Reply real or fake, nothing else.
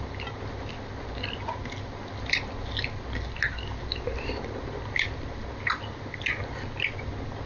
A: real